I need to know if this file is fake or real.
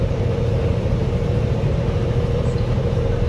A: fake